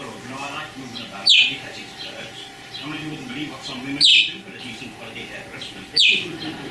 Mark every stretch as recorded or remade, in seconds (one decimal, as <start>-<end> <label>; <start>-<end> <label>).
0.0-6.7 recorded